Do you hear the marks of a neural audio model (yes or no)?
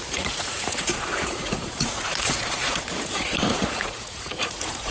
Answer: yes